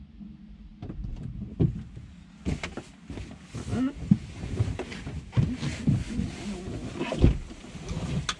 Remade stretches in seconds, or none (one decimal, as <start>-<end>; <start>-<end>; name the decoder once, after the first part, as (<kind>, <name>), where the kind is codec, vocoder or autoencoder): none